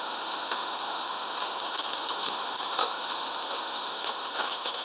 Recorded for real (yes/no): no